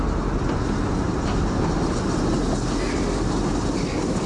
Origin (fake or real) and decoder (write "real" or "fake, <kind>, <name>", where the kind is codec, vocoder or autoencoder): real